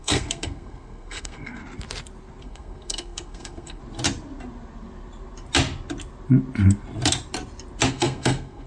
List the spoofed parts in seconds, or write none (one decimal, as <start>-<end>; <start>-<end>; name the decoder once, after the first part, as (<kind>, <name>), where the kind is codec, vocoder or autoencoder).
0.0-1.6 (codec, SNAC); 2.4-3.8; 7.9-8.7